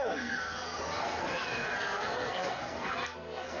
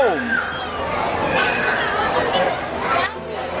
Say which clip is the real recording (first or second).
second